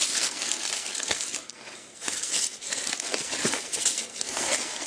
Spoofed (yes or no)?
yes